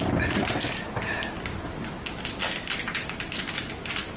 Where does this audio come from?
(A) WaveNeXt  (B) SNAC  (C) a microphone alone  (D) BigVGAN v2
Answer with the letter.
C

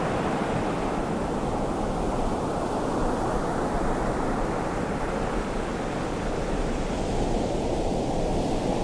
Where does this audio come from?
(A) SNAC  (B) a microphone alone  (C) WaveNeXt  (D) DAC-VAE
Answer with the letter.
B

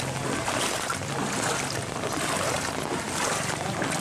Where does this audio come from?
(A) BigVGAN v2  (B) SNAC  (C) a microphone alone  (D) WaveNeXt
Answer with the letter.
C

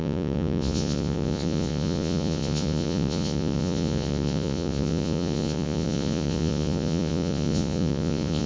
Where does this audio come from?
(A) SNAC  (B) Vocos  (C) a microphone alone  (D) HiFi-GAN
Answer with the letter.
B